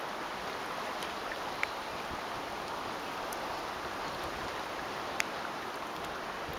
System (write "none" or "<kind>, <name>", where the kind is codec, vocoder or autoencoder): none